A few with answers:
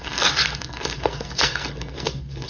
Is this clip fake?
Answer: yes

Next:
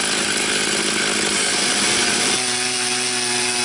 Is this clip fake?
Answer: no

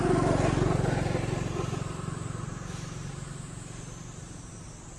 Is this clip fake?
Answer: no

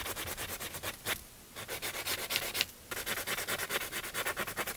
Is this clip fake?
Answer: no